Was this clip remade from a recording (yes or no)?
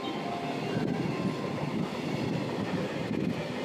no